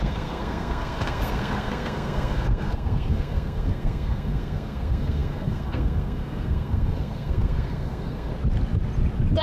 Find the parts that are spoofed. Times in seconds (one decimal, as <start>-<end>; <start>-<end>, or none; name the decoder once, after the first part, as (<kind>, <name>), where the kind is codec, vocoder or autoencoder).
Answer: 0.0-8.3 (codec, SNAC)